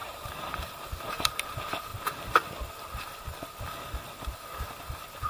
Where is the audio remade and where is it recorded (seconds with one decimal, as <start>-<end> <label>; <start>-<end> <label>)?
0.0-1.4 remade; 1.4-5.3 recorded